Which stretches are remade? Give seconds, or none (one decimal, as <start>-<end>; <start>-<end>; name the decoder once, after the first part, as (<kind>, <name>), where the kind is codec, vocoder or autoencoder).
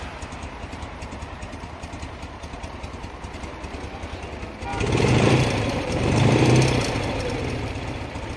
0.4-3.4 (vocoder, BigVGAN v2); 4.7-6.5